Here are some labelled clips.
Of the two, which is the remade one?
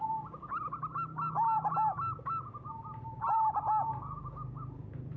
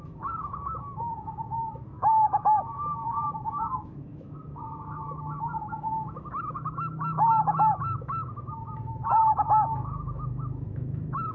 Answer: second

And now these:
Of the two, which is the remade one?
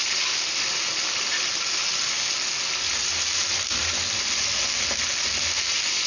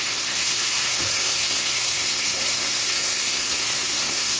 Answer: second